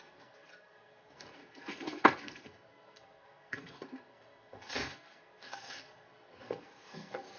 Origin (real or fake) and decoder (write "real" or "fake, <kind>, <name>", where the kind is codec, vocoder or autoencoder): fake, codec, SNAC